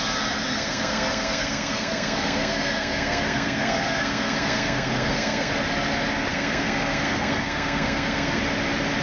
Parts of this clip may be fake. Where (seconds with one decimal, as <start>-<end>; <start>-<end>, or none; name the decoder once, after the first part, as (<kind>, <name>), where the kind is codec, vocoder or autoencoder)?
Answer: 0.5-5.5 (codec, SNAC); 6.3-8.4